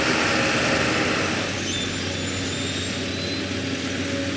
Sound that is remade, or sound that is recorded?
recorded